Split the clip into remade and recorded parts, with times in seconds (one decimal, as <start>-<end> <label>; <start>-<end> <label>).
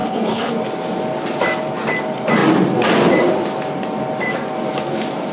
0.0-0.5 remade; 0.5-5.3 recorded